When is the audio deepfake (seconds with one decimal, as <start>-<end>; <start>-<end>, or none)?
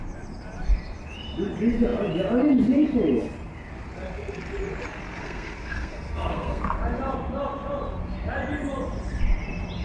5.2-6.6